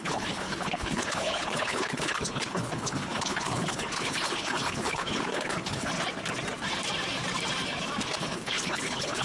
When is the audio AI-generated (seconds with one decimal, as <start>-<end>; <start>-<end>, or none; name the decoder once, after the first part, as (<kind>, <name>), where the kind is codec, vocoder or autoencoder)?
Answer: 0.0-5.9 (codec, HILCodec); 8.2-9.2